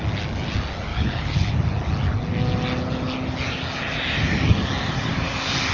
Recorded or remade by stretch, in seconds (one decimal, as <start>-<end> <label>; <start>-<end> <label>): 0.0-0.9 recorded; 0.9-1.5 remade; 1.5-5.7 recorded